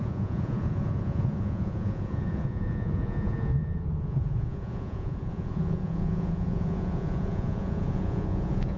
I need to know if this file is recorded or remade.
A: remade